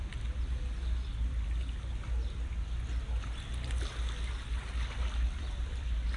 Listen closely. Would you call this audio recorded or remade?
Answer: recorded